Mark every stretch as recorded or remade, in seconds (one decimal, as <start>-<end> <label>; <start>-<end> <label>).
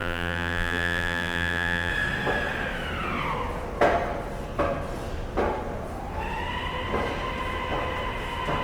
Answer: 0.0-1.9 remade; 1.9-8.6 recorded